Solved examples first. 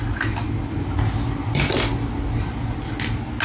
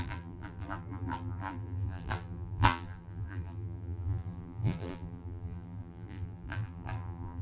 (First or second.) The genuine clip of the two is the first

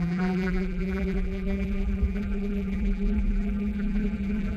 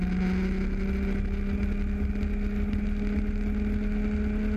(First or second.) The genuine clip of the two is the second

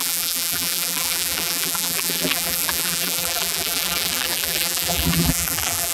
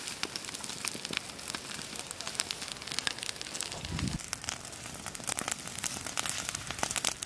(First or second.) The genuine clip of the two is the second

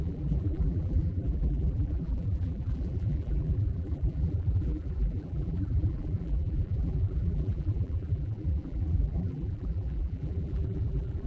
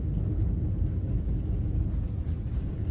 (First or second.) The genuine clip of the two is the second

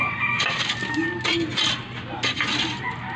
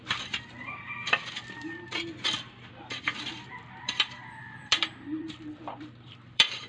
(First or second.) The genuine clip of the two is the first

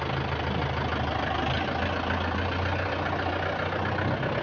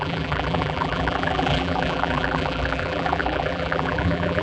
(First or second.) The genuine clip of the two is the first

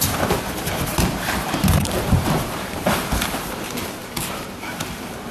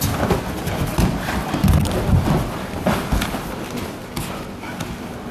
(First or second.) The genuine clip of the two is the second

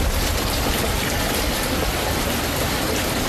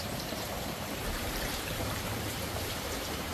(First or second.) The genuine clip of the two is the first